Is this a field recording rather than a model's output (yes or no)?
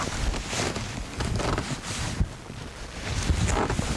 yes